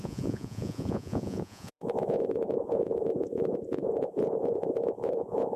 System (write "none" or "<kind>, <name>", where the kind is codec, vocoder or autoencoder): vocoder, Vocos